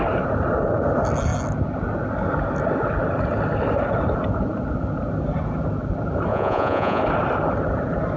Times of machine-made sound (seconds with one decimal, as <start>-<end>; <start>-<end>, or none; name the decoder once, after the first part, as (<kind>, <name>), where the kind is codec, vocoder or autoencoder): 6.3-7.0 (vocoder, Vocos)